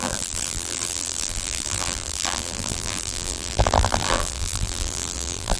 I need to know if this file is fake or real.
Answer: fake